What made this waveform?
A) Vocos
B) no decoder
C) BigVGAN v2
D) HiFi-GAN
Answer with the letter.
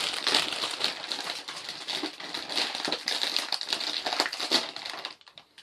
B